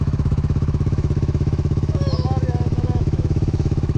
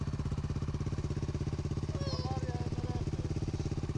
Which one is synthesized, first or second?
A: first